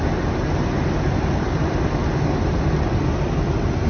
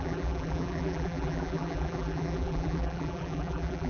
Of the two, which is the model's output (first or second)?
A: second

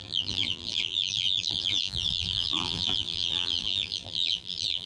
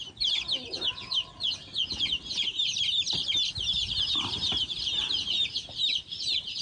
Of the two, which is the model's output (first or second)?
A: first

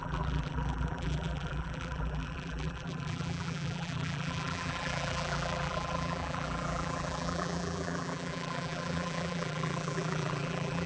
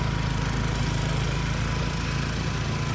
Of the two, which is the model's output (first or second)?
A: first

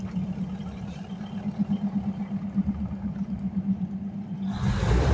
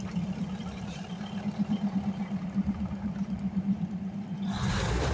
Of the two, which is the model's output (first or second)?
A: second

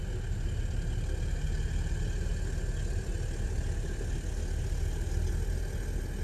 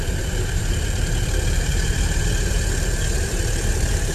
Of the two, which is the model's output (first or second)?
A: second